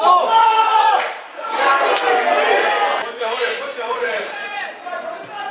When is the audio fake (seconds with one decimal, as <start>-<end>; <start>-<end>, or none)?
0.4-1.6; 3.2-4.7

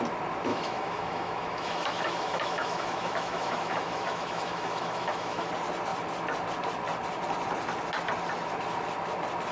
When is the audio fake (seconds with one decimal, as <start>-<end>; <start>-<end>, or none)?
0.5-5.5

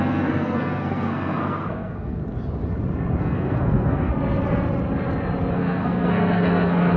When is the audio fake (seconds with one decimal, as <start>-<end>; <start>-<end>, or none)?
0.0-2.2; 3.2-4.1; 5.5-7.0

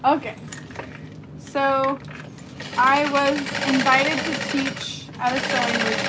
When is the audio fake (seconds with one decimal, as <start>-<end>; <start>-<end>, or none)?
none

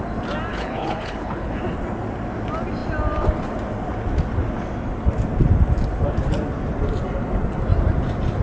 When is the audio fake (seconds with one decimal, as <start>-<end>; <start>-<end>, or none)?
0.5-1.6

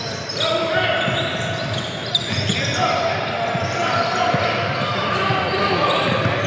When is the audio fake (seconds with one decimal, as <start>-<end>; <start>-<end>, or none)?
none

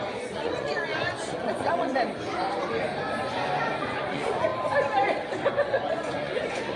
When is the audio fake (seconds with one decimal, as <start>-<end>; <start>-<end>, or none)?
0.0-1.9; 3.8-4.5; 5.5-6.8